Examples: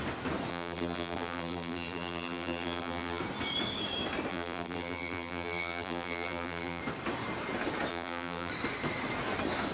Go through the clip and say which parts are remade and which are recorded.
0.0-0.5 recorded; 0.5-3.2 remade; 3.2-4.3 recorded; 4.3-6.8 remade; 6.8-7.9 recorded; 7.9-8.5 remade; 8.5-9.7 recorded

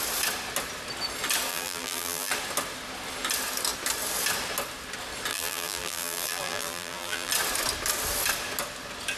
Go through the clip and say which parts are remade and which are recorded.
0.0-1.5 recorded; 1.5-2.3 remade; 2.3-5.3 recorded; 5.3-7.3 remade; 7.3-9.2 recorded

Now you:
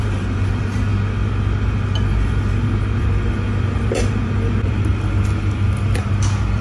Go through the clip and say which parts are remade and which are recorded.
0.0-0.9 remade; 0.9-3.0 recorded; 3.0-4.9 remade; 4.9-6.6 recorded

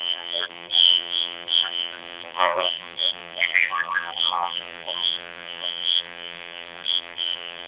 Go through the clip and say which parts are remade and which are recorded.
0.0-7.7 remade

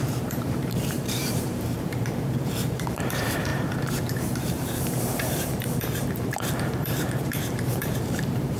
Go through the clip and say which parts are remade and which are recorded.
0.0-8.6 remade

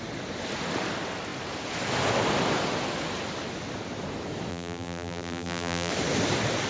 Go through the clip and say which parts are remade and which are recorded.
0.0-4.5 recorded; 4.5-5.9 remade; 5.9-6.7 recorded